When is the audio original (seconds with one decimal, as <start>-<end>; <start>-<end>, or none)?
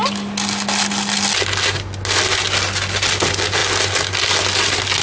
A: 0.0-5.0